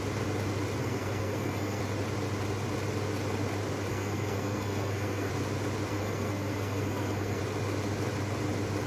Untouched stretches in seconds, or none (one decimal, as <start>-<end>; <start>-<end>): 0.0-0.8; 1.8-3.9; 5.3-5.9; 7.4-8.9